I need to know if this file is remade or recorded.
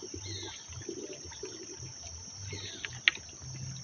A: recorded